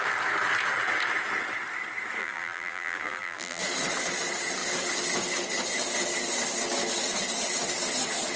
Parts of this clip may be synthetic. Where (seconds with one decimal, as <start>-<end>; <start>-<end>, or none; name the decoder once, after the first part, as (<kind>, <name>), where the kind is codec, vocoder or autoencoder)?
2.2-3.6 (vocoder, BigVGAN v2)